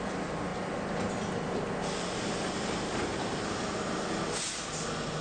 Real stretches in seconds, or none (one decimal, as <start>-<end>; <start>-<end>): 0.5-2.0; 3.1-5.2